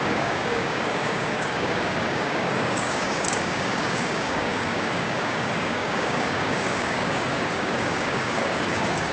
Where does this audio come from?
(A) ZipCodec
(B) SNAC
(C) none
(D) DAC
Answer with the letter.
D